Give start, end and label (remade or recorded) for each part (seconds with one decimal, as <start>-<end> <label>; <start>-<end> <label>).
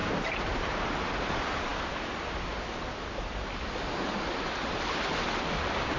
0.0-0.6 remade; 0.6-6.0 recorded